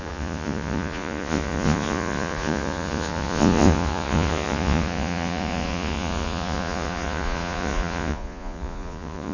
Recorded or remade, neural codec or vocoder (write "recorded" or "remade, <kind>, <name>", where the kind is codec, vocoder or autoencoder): remade, vocoder, Vocos